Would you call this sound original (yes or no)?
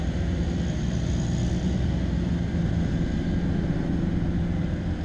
yes